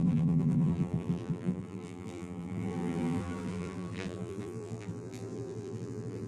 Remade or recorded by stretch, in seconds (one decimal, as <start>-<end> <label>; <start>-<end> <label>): 0.0-6.3 remade